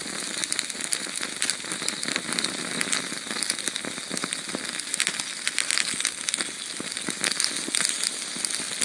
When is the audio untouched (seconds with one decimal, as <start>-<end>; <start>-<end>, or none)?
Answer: 0.0-8.8